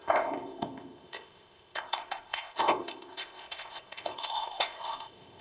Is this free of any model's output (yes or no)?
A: no